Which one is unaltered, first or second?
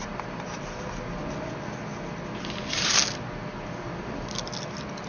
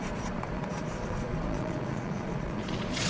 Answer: first